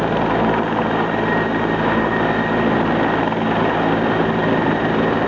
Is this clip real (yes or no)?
yes